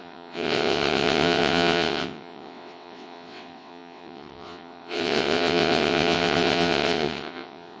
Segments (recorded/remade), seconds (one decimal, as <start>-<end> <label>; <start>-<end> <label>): 0.0-7.8 remade